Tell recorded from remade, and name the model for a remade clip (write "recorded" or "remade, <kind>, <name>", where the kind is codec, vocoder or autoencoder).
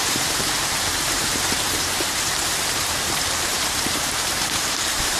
remade, vocoder, BigVGAN v2